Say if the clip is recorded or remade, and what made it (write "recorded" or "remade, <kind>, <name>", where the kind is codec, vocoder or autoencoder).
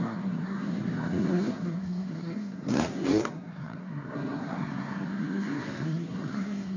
remade, codec, SNAC